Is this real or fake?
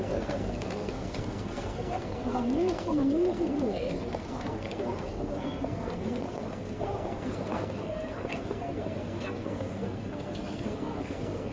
fake